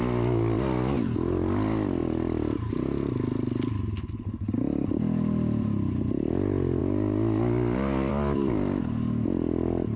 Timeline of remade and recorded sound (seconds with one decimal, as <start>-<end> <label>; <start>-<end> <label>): 0.0-10.0 recorded